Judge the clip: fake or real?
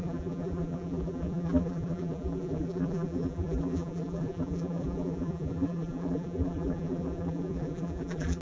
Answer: fake